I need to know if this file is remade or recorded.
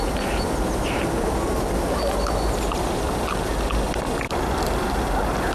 recorded